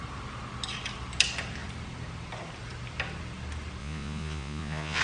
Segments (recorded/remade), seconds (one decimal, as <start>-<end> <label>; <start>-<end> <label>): 0.0-3.8 recorded; 3.8-5.0 remade